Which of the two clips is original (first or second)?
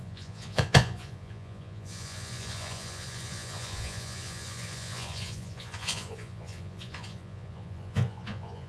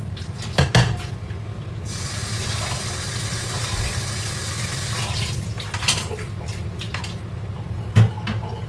second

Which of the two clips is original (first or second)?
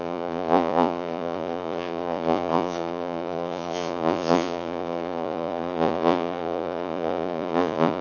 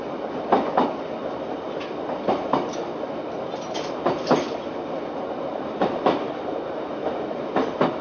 second